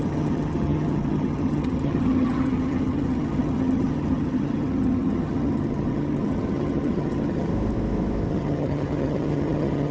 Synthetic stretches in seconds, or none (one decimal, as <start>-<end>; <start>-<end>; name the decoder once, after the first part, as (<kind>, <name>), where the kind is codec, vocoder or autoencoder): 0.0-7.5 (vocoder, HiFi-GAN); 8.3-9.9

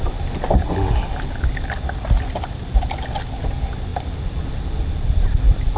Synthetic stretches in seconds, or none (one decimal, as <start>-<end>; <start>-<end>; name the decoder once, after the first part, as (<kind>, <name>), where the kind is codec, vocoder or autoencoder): none

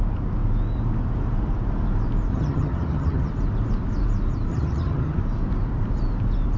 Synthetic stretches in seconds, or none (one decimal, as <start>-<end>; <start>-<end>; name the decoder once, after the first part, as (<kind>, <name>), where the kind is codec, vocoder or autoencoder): 2.3-3.3 (vocoder, HiFi-GAN); 4.5-5.2

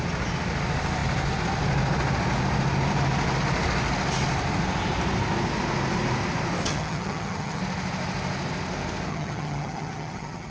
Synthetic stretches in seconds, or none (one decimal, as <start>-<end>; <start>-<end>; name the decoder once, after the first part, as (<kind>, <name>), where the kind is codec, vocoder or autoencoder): 6.7-7.6 (vocoder, HiFi-GAN); 9.1-10.5

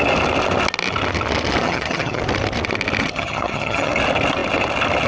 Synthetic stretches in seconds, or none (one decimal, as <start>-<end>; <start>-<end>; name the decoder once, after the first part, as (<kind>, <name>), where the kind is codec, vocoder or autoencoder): 1.6-2.2 (vocoder, HiFi-GAN); 3.0-3.9